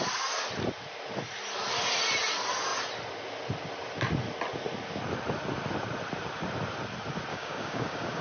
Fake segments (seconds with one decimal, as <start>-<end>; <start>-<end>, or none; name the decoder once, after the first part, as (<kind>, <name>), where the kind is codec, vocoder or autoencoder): 7.3-8.2 (codec, DAC)